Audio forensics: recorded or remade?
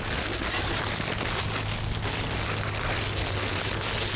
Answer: recorded